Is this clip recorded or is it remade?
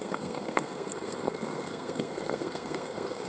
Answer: remade